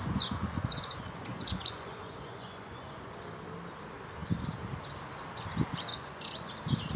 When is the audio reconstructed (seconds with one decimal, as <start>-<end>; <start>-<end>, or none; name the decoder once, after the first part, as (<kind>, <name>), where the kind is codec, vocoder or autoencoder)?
0.0-3.1 (vocoder, Vocos); 5.9-6.5